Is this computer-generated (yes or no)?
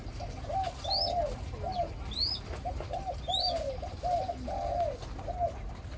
no